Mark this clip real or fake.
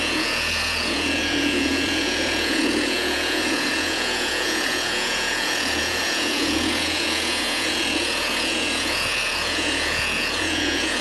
fake